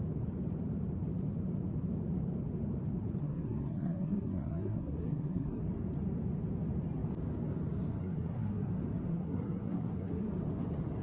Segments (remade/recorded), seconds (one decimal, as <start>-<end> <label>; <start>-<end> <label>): 0.0-3.2 recorded; 3.2-5.6 remade; 5.6-8.0 recorded; 8.0-8.7 remade; 8.7-9.1 recorded; 9.1-10.3 remade; 10.3-11.0 recorded

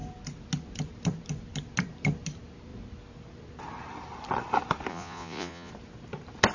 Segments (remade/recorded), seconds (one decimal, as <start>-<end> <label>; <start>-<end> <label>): 0.0-4.9 recorded; 4.9-5.7 remade; 5.7-6.5 recorded